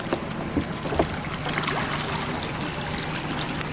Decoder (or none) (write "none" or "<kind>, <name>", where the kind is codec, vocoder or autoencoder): none